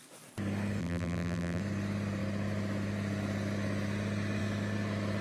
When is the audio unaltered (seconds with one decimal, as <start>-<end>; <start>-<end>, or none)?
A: 0.0-0.8; 1.6-5.2

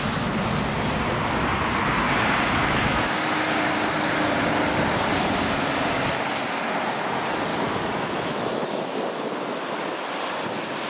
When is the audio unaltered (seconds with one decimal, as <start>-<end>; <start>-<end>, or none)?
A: 0.0-2.6; 3.1-7.5; 8.8-10.9

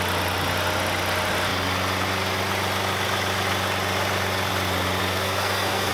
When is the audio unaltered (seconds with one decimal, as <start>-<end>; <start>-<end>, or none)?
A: 0.0-5.0

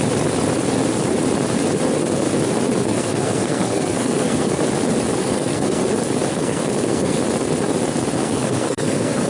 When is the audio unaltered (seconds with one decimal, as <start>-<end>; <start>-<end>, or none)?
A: 0.0-2.8; 4.6-5.2; 5.8-6.3; 7.2-8.2

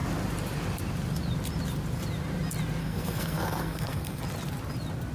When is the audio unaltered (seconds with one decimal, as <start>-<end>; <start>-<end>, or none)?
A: 0.0-2.8; 4.2-5.1

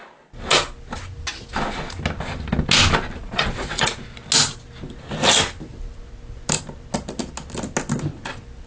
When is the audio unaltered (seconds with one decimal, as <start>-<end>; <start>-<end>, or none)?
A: 0.0-3.2; 4.0-8.7